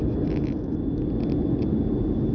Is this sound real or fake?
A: real